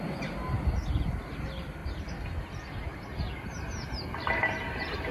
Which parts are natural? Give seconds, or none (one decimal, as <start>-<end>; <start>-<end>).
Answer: 0.0-5.1